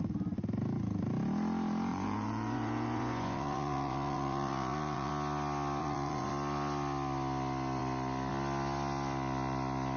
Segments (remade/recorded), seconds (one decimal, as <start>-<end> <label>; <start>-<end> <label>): 0.0-1.9 recorded; 1.9-5.1 remade; 5.1-5.8 recorded; 5.8-6.3 remade; 6.3-10.0 recorded